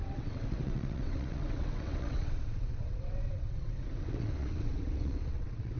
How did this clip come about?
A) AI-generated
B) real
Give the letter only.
A